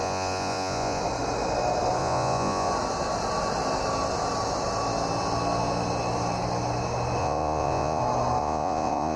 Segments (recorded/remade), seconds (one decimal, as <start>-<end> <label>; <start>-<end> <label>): 0.0-1.0 remade; 1.0-2.0 recorded; 2.0-2.7 remade; 2.7-7.2 recorded; 7.2-8.0 remade; 8.0-8.4 recorded; 8.4-9.2 remade